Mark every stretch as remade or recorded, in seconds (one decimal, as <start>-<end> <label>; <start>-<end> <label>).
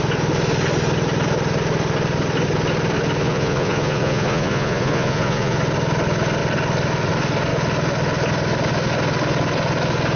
0.0-3.2 recorded; 3.2-5.6 remade; 5.6-10.2 recorded